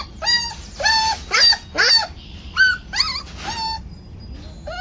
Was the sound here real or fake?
real